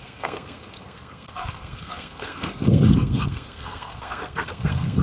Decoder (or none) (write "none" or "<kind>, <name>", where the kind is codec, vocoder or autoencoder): codec, SNAC